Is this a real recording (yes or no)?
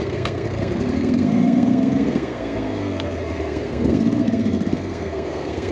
no